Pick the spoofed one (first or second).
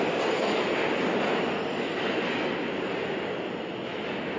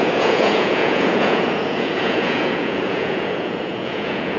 second